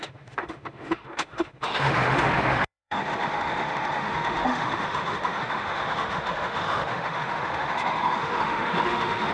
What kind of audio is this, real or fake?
fake